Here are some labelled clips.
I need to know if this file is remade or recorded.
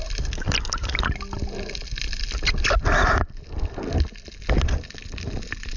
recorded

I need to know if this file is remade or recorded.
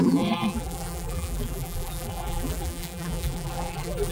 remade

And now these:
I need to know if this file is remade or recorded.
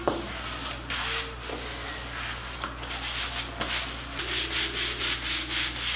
recorded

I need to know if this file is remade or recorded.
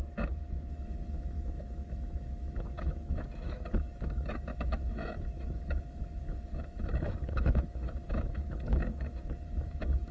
remade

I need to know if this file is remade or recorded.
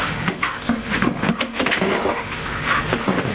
remade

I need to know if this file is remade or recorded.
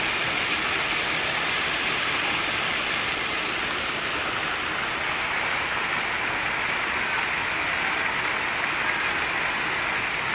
recorded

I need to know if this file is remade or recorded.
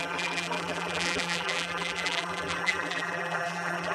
remade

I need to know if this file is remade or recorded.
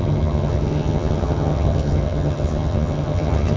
remade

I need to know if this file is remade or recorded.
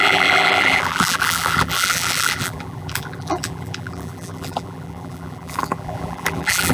remade